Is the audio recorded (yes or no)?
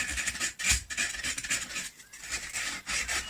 yes